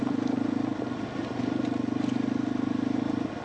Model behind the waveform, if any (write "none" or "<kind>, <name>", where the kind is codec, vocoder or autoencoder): none